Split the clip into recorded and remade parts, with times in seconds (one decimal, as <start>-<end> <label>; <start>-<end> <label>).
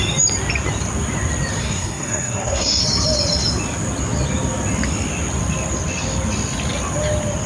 0.0-1.6 recorded; 1.6-2.8 remade; 2.8-7.5 recorded